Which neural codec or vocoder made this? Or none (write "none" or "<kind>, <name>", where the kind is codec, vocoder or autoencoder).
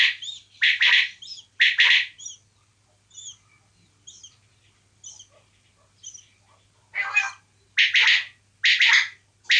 none